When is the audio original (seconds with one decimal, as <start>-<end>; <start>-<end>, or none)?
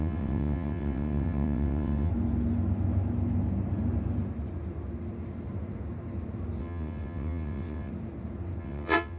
2.1-6.6; 7.9-8.6